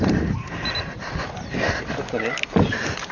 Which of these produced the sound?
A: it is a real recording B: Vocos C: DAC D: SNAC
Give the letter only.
A